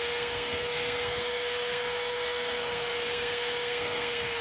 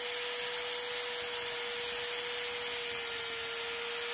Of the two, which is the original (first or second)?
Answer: second